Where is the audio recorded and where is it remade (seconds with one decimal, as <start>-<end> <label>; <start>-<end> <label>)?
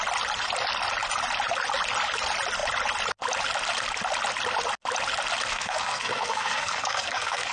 0.0-5.5 recorded; 5.5-7.5 remade